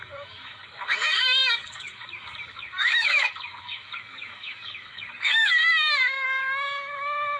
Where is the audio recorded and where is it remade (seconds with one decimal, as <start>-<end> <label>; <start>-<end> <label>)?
0.0-6.4 remade; 6.4-7.4 recorded